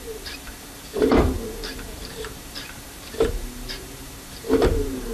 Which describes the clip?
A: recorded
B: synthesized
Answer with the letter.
B